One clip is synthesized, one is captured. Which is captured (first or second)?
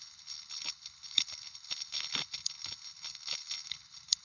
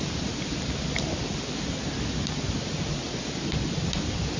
second